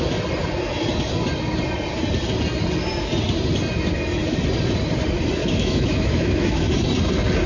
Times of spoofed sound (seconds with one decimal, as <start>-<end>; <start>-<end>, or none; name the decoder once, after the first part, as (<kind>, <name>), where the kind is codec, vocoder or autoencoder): 5.4-6.7 (autoencoder, DAC-VAE)